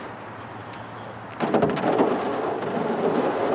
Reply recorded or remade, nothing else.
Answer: recorded